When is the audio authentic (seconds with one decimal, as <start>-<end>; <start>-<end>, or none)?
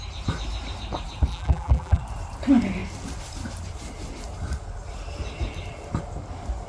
0.0-1.3; 2.0-6.7